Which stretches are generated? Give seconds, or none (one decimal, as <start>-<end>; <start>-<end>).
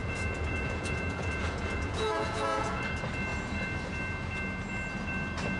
0.0-2.8